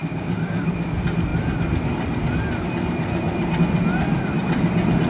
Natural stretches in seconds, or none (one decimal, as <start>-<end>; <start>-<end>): 0.7-5.1